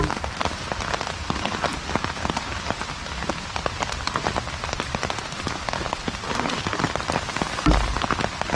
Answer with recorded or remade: recorded